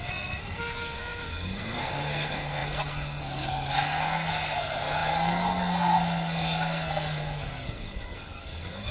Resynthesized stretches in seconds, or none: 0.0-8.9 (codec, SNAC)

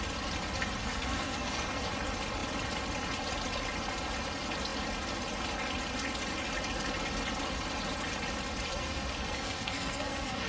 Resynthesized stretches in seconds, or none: 0.8-1.8 (codec, SNAC); 8.7-10.5

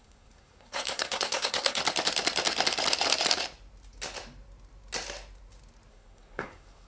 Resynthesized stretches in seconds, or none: 0.0-1.8 (codec, SNAC); 5.9-6.9

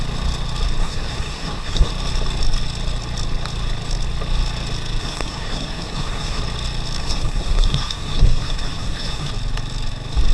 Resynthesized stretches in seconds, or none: 0.8-1.9 (codec, SNAC); 5.0-6.4; 7.0-9.3

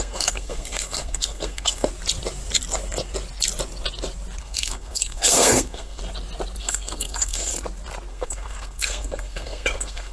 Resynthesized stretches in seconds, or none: 0.0-1.9 (codec, SNAC); 4.4-6.0; 6.6-7.5; 8.1-10.1